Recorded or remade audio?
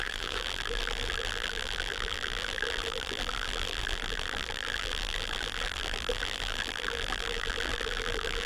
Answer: remade